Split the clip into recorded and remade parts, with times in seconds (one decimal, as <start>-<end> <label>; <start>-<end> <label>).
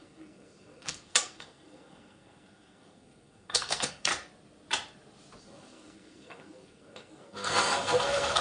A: 0.0-4.1 remade; 4.1-5.4 recorded; 5.4-8.4 remade